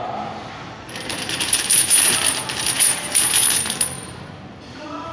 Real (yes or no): no